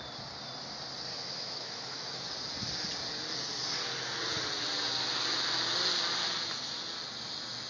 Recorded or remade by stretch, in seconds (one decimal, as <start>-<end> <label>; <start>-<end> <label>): 0.0-1.1 recorded; 1.1-2.2 remade; 2.2-7.7 recorded